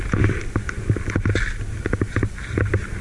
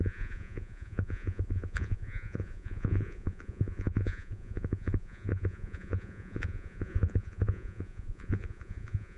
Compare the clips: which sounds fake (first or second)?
second